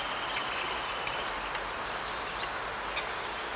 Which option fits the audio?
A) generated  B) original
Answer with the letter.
B